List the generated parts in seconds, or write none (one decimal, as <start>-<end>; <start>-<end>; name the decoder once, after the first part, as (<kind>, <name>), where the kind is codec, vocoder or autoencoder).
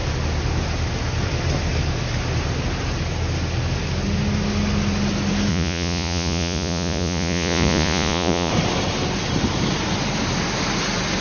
5.5-8.5 (vocoder, Vocos)